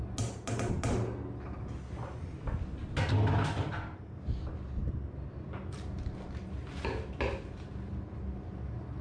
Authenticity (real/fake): real